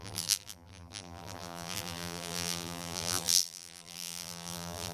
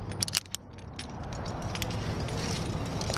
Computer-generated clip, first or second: first